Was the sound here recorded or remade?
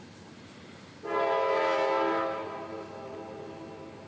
recorded